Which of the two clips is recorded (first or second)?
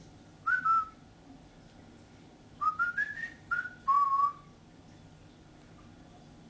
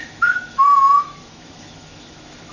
first